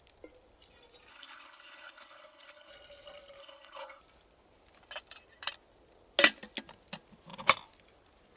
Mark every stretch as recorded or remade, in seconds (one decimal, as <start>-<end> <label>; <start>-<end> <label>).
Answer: 0.0-1.1 recorded; 1.1-2.7 remade; 2.7-3.4 recorded; 3.4-4.0 remade; 4.0-8.4 recorded